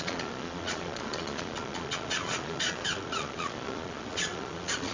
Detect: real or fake fake